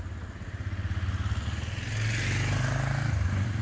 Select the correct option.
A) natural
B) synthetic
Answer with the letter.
A